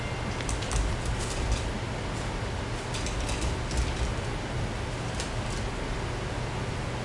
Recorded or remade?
recorded